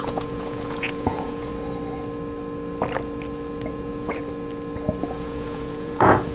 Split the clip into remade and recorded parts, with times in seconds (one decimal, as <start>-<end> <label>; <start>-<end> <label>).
0.0-1.5 remade; 1.5-3.7 recorded; 3.7-4.2 remade; 4.2-5.0 recorded; 5.0-6.3 remade